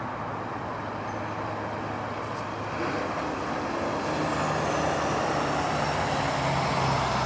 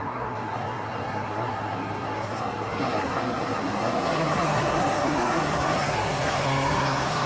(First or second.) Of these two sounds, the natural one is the first